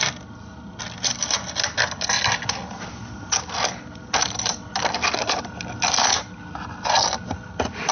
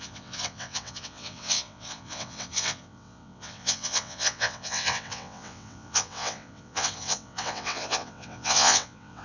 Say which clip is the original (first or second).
first